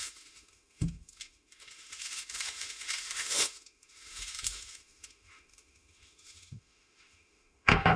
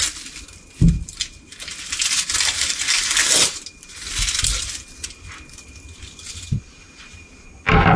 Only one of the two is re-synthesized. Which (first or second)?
first